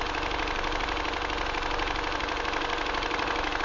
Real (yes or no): yes